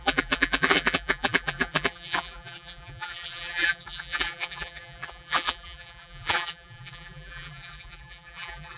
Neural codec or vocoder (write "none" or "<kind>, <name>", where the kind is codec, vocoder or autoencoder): vocoder, BigVGAN v2